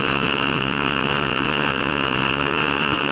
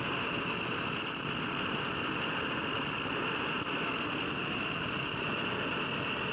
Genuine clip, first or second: second